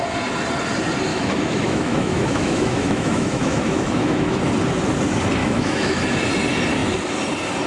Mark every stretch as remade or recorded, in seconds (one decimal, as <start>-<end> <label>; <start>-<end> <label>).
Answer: 0.0-1.1 recorded; 1.1-4.4 remade; 4.4-5.4 recorded; 5.4-6.0 remade; 6.0-7.7 recorded